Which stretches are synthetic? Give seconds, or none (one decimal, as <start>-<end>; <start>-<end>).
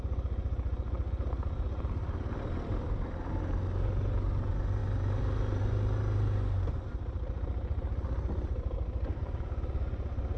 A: none